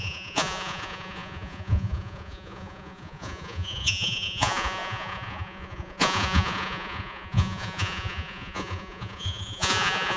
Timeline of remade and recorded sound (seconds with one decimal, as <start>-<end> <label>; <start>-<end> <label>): 0.0-10.2 remade